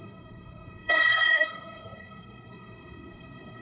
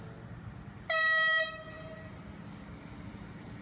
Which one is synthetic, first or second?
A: first